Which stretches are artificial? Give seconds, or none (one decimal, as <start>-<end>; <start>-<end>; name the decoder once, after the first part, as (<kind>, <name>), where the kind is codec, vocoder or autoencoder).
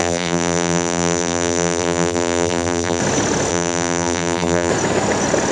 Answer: 0.0-3.0 (vocoder, BigVGAN v2); 3.5-4.7